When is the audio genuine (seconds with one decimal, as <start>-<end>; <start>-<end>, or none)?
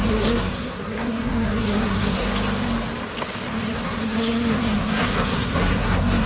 2.3-3.6